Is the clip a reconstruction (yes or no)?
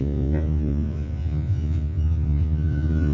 yes